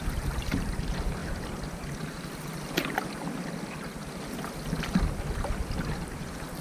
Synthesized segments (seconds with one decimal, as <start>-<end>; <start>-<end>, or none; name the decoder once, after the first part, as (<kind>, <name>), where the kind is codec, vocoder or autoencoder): none